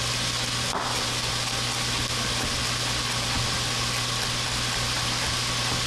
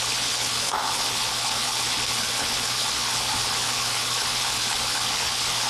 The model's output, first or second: second